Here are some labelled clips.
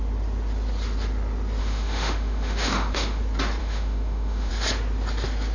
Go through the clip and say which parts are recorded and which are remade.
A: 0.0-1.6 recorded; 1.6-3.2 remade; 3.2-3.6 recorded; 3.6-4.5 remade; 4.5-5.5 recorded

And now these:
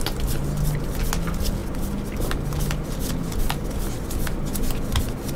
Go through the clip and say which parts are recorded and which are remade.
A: 0.0-5.4 recorded

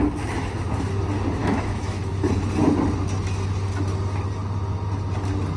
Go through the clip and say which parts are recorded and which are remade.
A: 0.0-1.4 recorded; 1.4-2.0 remade; 2.0-5.6 recorded

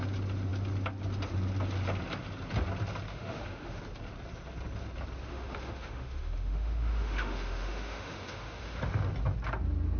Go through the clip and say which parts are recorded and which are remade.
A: 0.0-3.1 recorded; 3.1-3.8 remade; 3.8-5.3 recorded; 5.3-8.8 remade; 8.8-10.0 recorded